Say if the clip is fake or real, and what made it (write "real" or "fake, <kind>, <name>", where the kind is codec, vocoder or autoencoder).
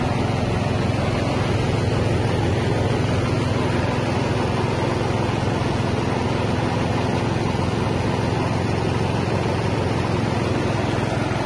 real